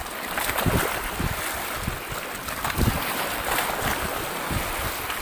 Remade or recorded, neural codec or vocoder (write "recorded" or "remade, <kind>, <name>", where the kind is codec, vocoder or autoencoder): recorded